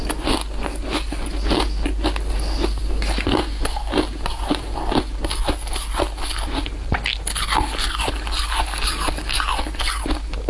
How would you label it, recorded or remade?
recorded